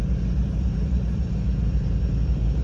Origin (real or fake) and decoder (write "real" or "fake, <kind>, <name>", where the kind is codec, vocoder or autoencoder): fake, vocoder, BigVGAN v2